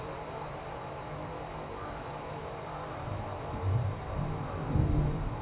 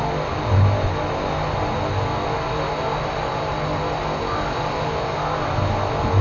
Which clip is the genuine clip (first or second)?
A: second